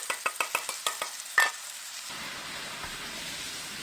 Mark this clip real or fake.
real